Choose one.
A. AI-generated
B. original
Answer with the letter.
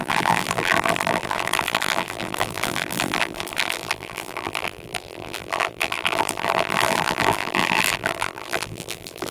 A